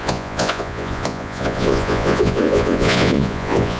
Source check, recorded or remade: remade